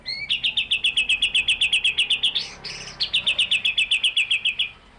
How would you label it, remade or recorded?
recorded